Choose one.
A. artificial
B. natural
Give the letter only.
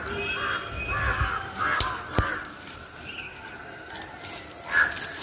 B